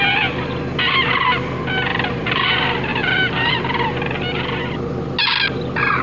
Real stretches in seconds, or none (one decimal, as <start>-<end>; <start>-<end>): 0.0-1.9; 2.5-2.9; 3.6-6.0